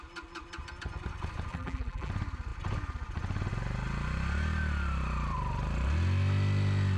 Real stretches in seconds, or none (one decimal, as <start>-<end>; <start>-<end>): 0.0-1.5; 2.1-7.0